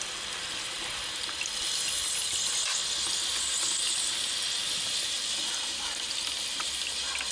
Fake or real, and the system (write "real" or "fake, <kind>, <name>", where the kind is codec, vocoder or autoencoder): real